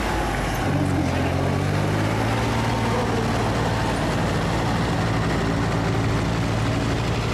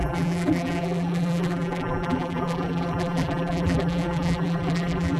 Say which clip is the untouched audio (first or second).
first